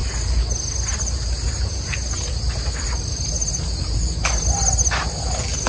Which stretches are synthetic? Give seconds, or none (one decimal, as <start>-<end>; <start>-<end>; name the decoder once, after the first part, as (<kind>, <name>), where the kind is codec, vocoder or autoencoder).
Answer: none